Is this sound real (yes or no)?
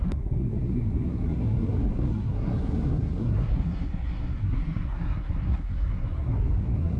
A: no